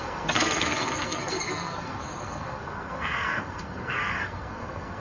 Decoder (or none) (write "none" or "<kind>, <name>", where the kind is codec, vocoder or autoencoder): codec, SNAC